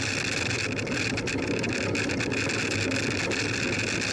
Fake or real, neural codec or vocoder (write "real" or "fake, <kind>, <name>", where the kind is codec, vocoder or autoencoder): real